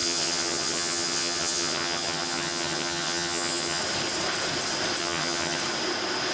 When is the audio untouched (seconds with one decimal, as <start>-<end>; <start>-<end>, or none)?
3.8-5.0; 5.6-6.3